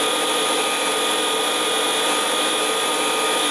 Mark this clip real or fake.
real